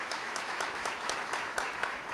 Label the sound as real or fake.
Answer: fake